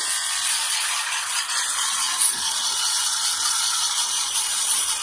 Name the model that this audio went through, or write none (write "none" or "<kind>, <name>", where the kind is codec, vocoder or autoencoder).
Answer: vocoder, Vocos